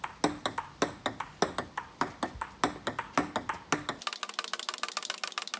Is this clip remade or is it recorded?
recorded